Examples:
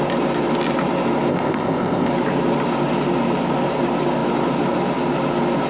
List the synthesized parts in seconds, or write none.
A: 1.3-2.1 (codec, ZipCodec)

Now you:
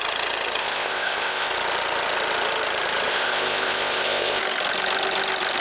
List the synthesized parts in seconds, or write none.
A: 0.6-1.5 (codec, ZipCodec); 3.1-4.4

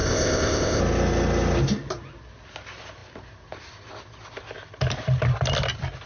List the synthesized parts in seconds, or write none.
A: 0.0-0.8 (codec, ZipCodec)